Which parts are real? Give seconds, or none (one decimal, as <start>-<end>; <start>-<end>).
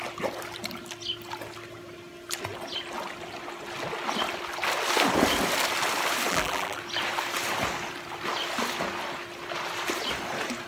0.0-6.3; 6.8-10.7